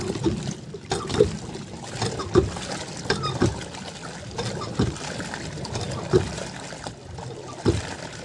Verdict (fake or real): real